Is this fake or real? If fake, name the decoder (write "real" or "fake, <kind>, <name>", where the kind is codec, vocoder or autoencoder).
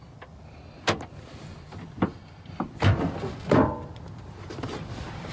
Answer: real